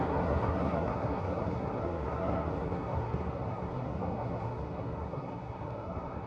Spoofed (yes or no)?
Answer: yes